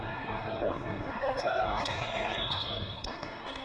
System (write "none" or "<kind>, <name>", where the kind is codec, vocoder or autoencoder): codec, SNAC